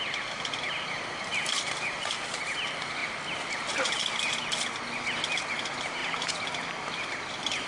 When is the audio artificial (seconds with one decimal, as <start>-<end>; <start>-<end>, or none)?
none